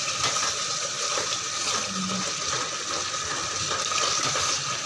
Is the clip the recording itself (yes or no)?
yes